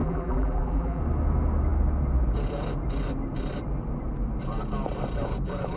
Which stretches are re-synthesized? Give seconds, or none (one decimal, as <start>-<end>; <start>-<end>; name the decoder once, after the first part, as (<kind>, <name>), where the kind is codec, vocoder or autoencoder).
0.0-1.0 (vocoder, BigVGAN v2)